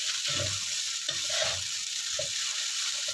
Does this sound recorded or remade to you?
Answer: recorded